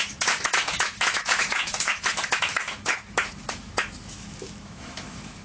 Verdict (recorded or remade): remade